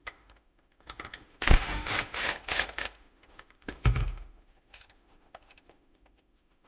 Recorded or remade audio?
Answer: remade